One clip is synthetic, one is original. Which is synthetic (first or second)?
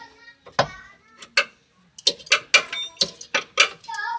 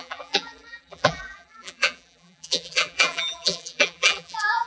second